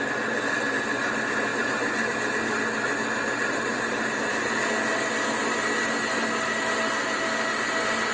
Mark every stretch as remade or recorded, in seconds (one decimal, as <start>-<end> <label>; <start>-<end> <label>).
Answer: 0.0-1.5 recorded; 1.5-2.1 remade; 2.1-3.7 recorded; 3.7-4.6 remade; 4.6-8.1 recorded